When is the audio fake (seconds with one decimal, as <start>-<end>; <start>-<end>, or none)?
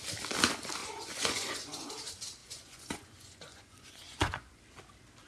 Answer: 0.8-1.9; 2.4-4.6